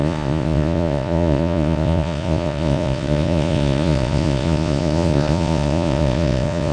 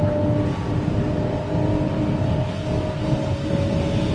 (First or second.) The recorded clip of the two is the second